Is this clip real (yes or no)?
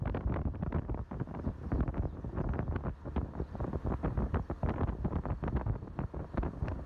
yes